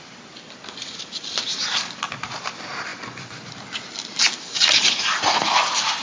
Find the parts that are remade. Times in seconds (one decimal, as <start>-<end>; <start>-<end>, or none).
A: 2.9-3.5